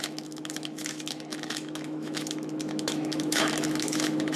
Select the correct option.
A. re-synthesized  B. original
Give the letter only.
A